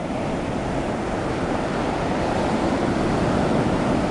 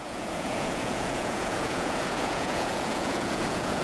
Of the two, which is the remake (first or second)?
second